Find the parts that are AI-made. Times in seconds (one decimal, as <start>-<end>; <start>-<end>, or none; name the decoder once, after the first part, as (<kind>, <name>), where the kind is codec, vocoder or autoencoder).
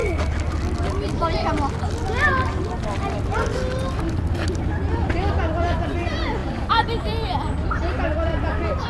none